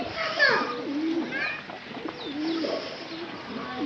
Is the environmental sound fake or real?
real